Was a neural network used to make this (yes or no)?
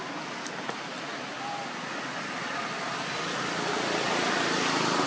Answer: no